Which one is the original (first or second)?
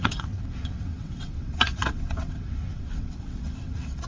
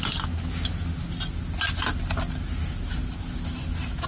second